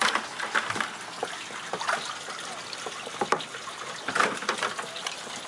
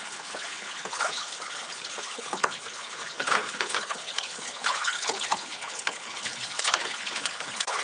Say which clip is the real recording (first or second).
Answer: first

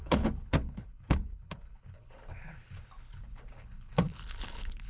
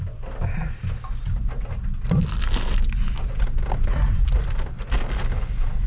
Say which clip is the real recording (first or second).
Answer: second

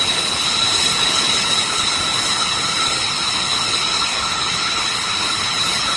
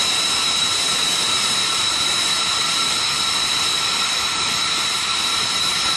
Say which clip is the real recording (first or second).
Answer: second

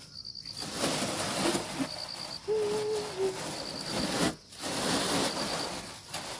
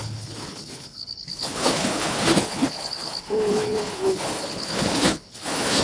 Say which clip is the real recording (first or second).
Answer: first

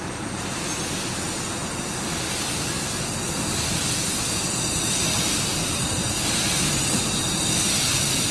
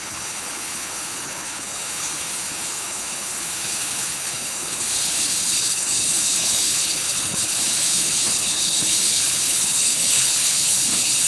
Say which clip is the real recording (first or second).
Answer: first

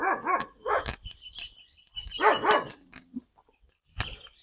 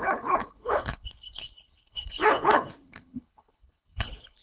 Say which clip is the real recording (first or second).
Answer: first